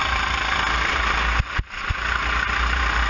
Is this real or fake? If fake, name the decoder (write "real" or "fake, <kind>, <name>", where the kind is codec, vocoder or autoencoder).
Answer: real